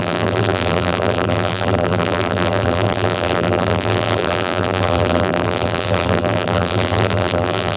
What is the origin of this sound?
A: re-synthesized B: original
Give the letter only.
A